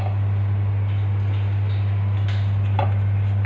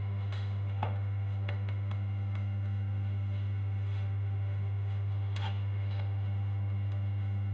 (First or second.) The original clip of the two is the first